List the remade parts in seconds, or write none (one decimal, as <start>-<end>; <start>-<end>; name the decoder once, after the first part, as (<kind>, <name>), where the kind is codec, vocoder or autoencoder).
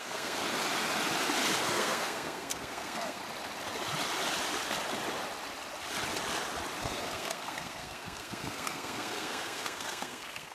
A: 0.0-0.4 (codec, SNAC); 1.6-3.2; 6.8-10.5